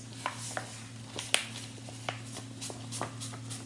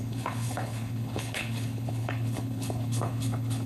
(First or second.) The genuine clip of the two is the first